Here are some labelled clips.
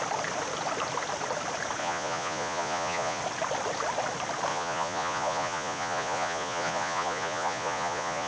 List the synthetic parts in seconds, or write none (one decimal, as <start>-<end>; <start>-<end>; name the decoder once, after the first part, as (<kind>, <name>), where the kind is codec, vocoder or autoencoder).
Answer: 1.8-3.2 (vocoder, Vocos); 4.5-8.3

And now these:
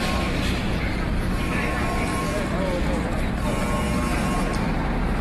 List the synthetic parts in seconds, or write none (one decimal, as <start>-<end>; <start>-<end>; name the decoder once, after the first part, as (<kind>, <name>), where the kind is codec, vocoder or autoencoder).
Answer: 0.6-1.1 (vocoder, Vocos)

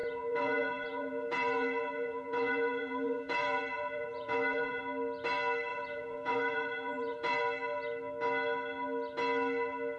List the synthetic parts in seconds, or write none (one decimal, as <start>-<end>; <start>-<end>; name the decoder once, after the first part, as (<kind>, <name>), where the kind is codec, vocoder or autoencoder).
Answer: 0.0-4.8 (vocoder, Vocos); 5.7-7.4